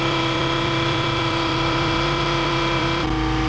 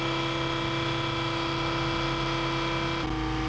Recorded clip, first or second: second